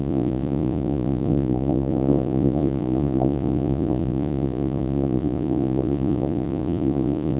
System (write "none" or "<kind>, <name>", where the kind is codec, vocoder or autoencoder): vocoder, Vocos